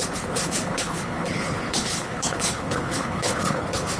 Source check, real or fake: fake